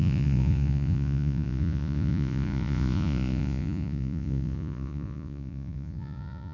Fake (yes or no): yes